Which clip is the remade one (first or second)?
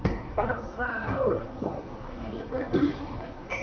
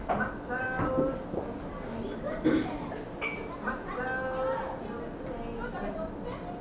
first